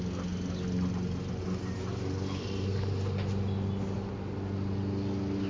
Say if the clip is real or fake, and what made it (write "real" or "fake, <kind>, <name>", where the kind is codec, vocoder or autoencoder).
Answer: real